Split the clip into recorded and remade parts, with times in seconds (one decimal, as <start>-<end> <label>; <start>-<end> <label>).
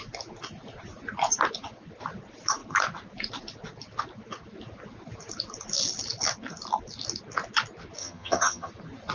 0.0-8.0 recorded; 8.0-8.7 remade; 8.7-9.1 recorded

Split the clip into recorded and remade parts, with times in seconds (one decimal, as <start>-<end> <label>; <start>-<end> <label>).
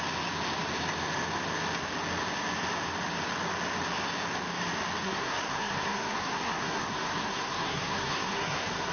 0.0-5.0 recorded; 5.0-8.9 remade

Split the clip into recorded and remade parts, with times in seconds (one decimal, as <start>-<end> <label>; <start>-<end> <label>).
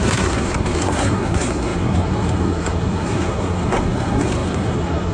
0.0-5.1 remade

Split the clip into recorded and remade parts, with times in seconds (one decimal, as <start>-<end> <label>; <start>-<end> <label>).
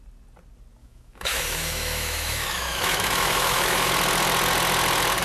0.0-0.8 recorded; 0.8-3.9 remade; 3.9-5.2 recorded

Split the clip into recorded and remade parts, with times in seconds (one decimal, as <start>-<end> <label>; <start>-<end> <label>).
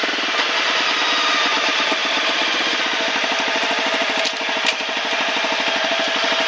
0.0-6.5 recorded